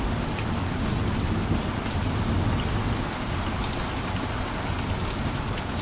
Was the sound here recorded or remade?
recorded